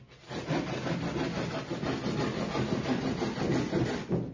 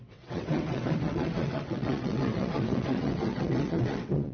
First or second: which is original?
first